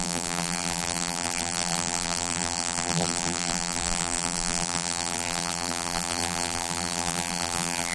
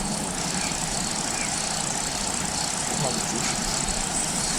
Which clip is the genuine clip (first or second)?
second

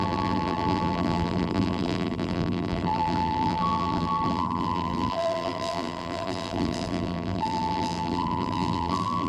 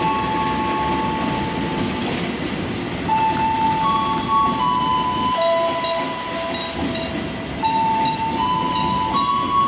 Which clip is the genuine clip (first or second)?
second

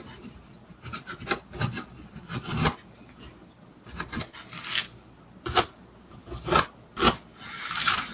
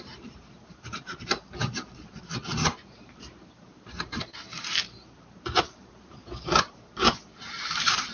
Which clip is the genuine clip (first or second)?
first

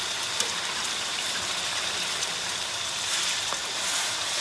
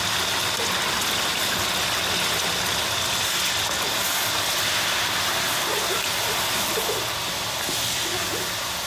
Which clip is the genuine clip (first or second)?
second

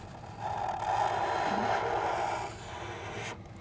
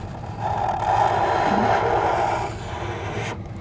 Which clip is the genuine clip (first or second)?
first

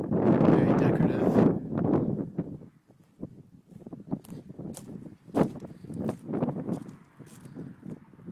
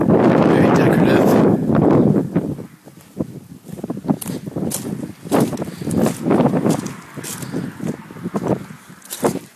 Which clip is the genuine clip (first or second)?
first